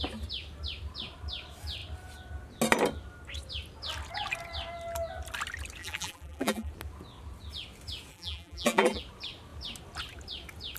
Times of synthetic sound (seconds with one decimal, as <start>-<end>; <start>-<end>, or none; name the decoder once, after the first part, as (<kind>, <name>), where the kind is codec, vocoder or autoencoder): 5.8-6.7 (vocoder, BigVGAN v2); 8.1-9.0